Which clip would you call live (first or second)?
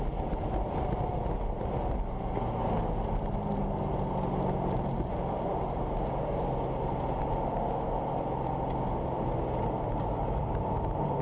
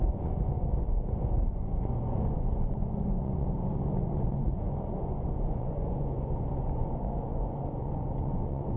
first